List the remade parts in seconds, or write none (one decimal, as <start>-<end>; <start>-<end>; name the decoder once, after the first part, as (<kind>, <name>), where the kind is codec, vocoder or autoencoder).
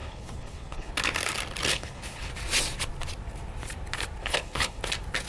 0.0-0.9 (codec, HILCodec); 1.7-2.3; 4.2-4.8